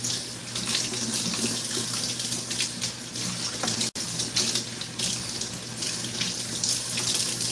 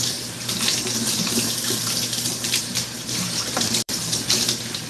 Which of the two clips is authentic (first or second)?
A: first